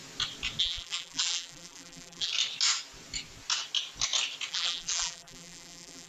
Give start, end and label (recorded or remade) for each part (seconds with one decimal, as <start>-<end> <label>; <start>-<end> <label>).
0.0-0.6 recorded; 0.6-2.3 remade; 2.3-4.5 recorded; 4.5-6.1 remade